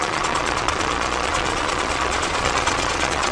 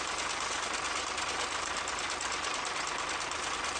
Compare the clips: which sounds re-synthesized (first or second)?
first